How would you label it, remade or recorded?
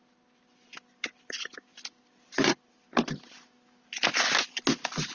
recorded